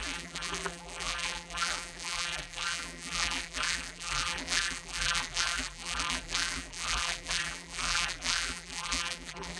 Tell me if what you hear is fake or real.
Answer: fake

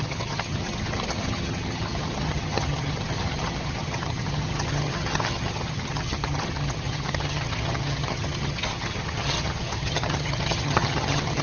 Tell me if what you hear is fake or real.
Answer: fake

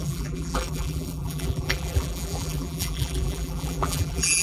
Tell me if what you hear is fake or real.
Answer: fake